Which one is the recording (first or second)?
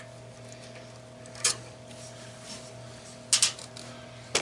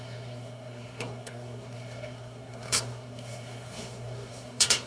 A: first